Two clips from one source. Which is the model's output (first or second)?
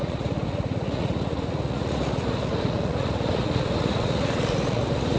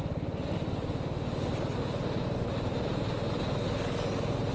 first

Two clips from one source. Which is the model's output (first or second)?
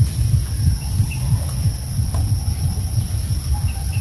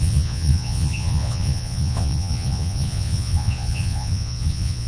second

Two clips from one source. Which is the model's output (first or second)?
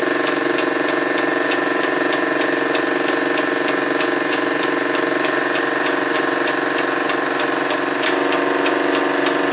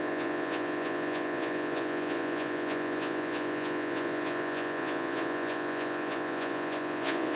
second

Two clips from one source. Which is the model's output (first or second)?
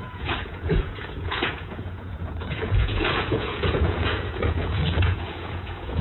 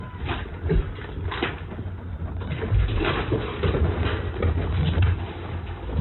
first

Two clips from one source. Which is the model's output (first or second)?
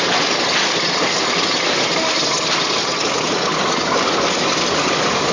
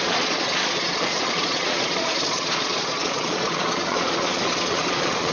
second